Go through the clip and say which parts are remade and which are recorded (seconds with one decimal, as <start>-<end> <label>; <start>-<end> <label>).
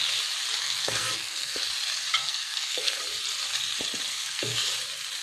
0.0-0.6 recorded; 0.6-1.6 remade; 1.6-2.2 recorded; 2.2-3.0 remade; 3.0-4.1 recorded; 4.1-4.7 remade; 4.7-5.2 recorded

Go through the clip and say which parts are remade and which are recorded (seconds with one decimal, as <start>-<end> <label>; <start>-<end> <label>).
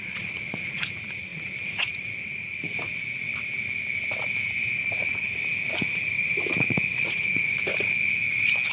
0.0-3.3 remade; 3.3-4.9 recorded; 4.9-7.6 remade; 7.6-8.7 recorded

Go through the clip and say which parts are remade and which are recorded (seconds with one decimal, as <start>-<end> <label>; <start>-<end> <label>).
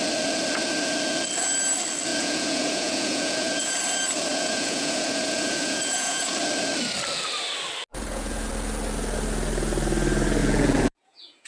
0.0-2.1 recorded; 2.1-3.7 remade; 3.7-4.3 recorded; 4.3-6.3 remade; 6.3-7.9 recorded; 7.9-8.5 remade; 8.5-10.4 recorded; 10.4-11.5 remade